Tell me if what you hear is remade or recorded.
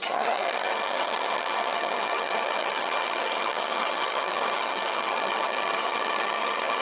remade